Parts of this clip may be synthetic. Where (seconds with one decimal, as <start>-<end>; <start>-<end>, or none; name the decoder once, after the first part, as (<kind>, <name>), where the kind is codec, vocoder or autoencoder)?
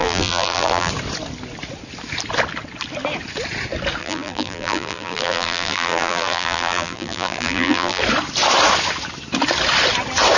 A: 0.0-0.9 (vocoder, BigVGAN v2); 4.0-8.0